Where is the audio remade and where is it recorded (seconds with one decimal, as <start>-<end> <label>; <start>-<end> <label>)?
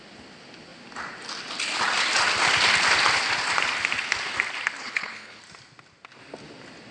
0.0-4.8 recorded; 4.8-5.4 remade; 5.4-6.9 recorded